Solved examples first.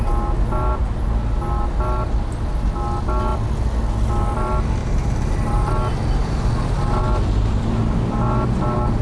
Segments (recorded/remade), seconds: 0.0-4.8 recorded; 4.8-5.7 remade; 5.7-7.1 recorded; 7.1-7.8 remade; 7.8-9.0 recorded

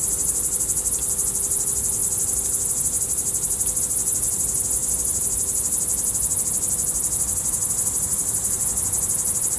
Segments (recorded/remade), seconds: 0.0-9.6 recorded

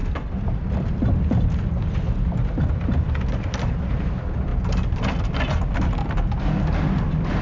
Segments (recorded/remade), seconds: 0.0-6.0 remade; 6.0-7.0 recorded; 7.0-7.4 remade

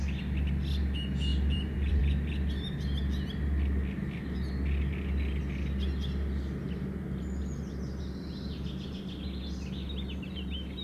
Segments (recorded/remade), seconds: 0.0-1.3 recorded; 1.3-2.0 remade; 2.0-10.8 recorded

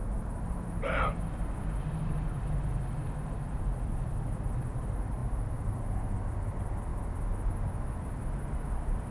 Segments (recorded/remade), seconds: 0.0-3.6 recorded; 3.6-6.9 remade; 6.9-8.4 recorded; 8.4-9.1 remade